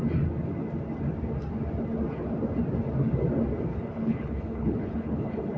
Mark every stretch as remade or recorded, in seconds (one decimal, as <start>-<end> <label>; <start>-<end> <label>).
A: 0.0-3.7 recorded; 3.7-5.6 remade